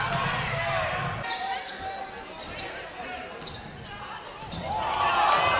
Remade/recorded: recorded